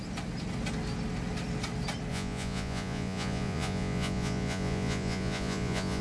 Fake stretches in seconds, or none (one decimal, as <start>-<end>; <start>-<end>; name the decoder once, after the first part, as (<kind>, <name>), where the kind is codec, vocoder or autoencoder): 2.1-6.0 (vocoder, Vocos)